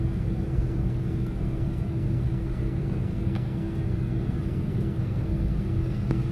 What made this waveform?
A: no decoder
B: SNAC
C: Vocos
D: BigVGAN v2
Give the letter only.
B